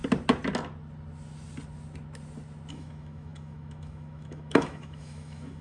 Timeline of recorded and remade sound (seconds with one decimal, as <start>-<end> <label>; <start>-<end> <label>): 0.0-2.7 recorded; 2.7-5.6 remade

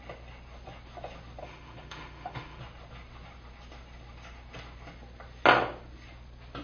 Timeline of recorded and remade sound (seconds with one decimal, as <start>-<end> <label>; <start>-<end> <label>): 0.0-1.4 recorded; 1.4-2.6 remade; 2.6-6.6 recorded

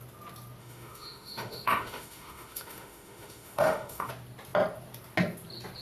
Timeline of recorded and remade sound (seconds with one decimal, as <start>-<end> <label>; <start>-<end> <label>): 0.0-0.6 recorded; 0.6-4.1 remade; 4.1-5.8 recorded